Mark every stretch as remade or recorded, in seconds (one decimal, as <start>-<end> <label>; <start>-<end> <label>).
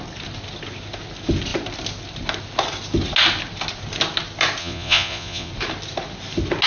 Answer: 0.0-4.6 recorded; 4.6-5.5 remade; 5.5-6.7 recorded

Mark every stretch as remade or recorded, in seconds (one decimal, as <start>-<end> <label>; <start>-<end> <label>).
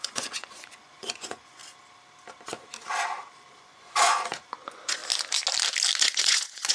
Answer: 0.0-1.6 remade; 1.6-3.6 recorded; 3.6-5.0 remade; 5.0-6.0 recorded; 6.0-6.7 remade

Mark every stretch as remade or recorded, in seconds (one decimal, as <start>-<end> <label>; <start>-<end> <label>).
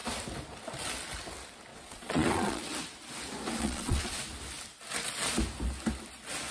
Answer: 0.0-1.7 recorded; 1.7-2.6 remade; 2.6-3.6 recorded; 3.6-4.2 remade; 4.2-6.5 recorded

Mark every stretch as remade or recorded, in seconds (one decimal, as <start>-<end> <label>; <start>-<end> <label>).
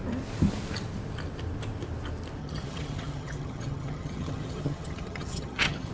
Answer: 0.0-2.4 recorded; 2.4-5.9 remade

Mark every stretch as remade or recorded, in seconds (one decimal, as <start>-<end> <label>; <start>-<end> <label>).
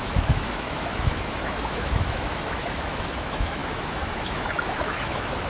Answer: 0.0-5.5 remade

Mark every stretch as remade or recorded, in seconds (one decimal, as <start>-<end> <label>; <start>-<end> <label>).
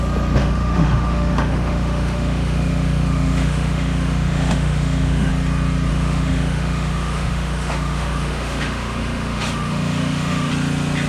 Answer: 0.0-0.4 recorded; 0.4-5.3 remade; 5.3-5.9 recorded; 5.9-10.5 remade; 10.5-11.1 recorded